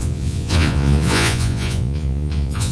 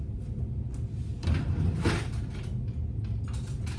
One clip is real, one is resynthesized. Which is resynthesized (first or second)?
first